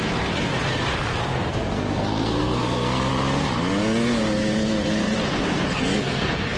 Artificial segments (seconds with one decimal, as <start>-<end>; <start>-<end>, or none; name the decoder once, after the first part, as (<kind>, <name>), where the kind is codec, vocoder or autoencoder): 1.1-3.1 (codec, SNAC); 5.3-6.6